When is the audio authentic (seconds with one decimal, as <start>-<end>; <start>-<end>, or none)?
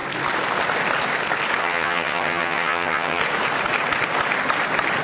0.0-1.6; 3.2-5.0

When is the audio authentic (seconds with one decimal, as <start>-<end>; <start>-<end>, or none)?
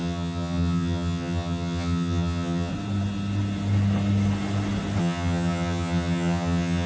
2.7-5.0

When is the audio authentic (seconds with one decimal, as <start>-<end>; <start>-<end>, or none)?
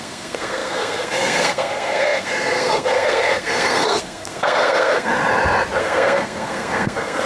5.1-5.8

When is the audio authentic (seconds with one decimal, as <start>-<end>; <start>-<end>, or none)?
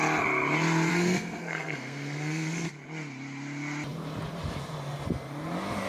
0.0-0.9; 2.7-5.9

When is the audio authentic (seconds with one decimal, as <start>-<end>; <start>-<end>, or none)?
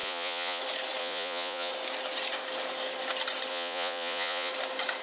0.6-1.0; 1.7-3.5; 4.5-5.0